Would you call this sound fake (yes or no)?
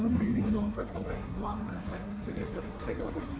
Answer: yes